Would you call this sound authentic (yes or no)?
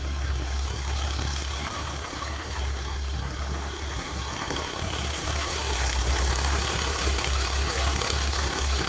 no